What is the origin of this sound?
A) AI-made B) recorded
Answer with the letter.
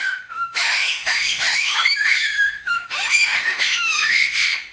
A